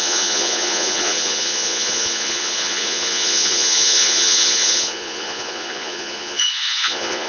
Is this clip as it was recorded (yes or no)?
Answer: no